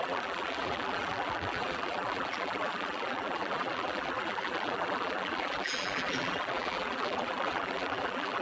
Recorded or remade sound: remade